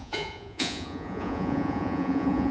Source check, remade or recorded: remade